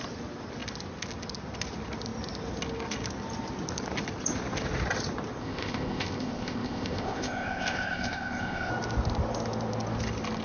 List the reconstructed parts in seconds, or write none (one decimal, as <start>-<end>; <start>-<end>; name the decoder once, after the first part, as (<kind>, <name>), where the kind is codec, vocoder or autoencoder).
5.4-8.7 (codec, ZipCodec)

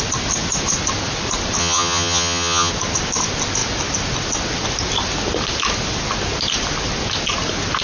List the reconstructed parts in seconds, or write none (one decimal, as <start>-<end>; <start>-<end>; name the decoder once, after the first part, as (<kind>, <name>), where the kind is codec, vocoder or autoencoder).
1.6-2.7 (vocoder, HiFi-GAN)

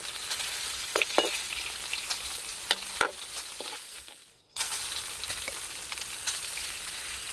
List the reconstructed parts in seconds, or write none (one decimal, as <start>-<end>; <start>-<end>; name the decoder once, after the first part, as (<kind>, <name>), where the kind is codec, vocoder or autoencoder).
3.8-4.8 (codec, SNAC)

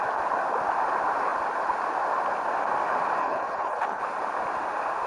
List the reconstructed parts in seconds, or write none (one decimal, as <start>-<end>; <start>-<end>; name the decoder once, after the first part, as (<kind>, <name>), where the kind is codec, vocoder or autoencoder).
3.2-4.0 (codec, HILCodec)